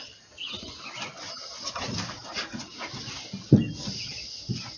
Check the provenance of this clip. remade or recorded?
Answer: recorded